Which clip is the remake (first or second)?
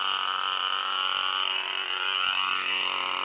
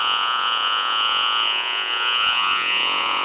second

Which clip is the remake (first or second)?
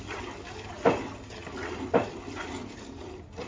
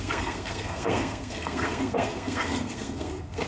second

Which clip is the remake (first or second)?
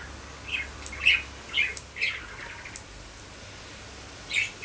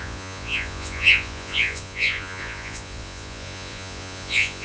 second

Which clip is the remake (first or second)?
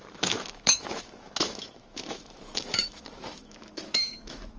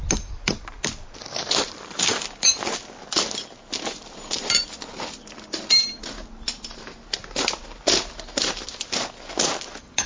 first